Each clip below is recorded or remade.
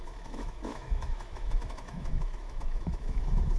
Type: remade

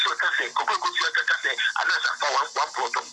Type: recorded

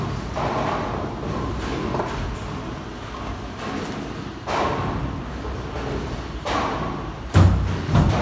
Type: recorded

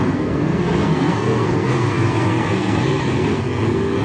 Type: remade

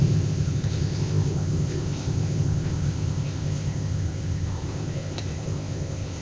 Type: remade